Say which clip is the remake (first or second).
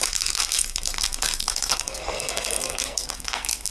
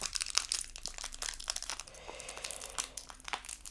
first